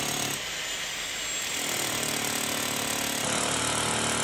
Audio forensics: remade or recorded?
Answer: recorded